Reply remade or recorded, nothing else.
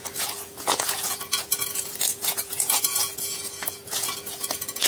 remade